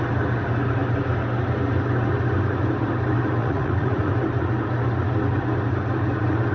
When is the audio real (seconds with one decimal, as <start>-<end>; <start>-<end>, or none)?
0.0-3.4; 4.1-6.5